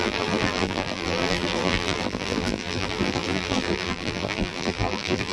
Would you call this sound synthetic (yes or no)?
yes